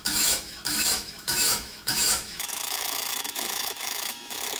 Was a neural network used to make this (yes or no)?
yes